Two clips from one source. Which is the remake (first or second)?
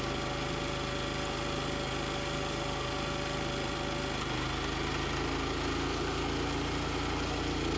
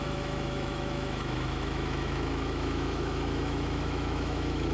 second